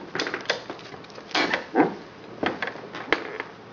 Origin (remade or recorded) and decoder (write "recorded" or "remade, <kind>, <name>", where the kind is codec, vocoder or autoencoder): recorded